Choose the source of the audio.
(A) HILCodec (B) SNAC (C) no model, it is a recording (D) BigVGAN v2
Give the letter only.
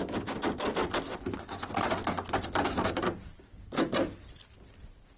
C